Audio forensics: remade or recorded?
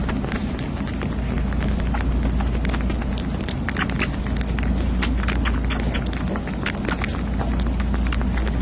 recorded